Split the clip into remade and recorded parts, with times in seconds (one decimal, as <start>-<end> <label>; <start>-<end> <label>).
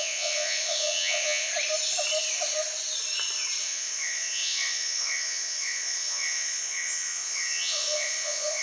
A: 0.0-1.5 remade; 1.5-3.6 recorded; 3.6-8.6 remade